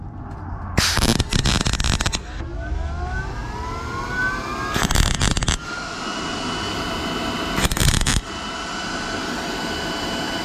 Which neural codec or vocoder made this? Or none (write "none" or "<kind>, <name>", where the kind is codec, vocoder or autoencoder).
none